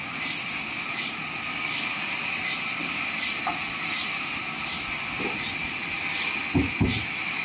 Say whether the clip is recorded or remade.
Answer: recorded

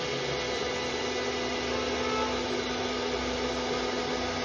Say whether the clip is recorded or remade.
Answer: recorded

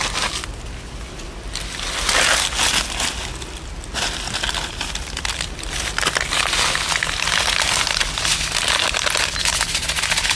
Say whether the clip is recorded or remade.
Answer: recorded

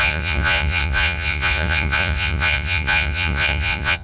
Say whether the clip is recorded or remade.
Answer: remade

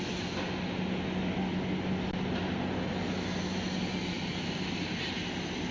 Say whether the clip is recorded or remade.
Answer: recorded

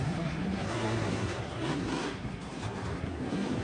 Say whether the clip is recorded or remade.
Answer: remade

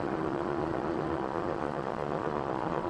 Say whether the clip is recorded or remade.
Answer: remade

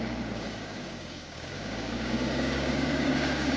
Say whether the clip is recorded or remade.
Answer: remade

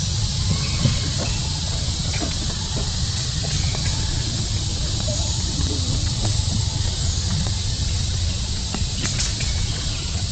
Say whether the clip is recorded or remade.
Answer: remade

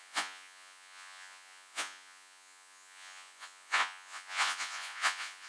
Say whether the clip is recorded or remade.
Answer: remade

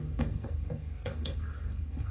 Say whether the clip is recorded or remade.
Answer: remade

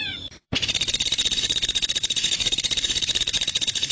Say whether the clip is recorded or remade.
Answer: remade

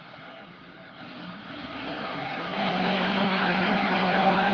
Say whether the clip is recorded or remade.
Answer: remade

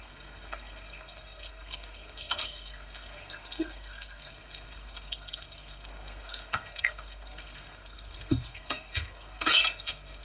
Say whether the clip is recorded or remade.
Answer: remade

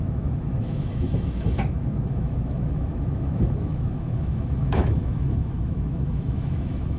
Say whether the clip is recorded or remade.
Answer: remade